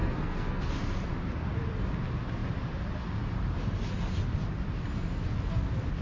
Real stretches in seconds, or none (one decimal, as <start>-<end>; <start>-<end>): 0.7-6.0